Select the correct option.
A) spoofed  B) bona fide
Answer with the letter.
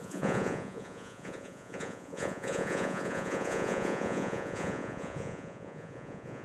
A